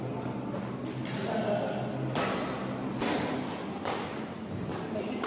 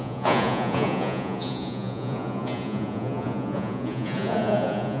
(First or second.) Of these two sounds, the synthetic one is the second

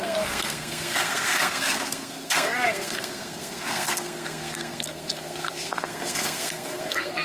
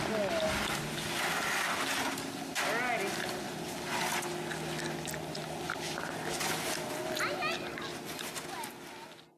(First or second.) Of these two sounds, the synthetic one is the first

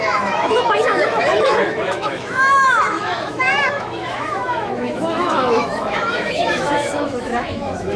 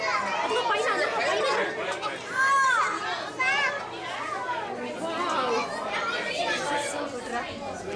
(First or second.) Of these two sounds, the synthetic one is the first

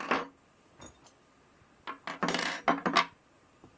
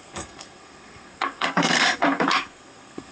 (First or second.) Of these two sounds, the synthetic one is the second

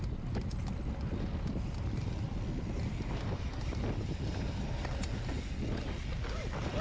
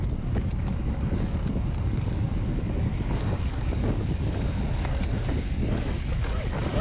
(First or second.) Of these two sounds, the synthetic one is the second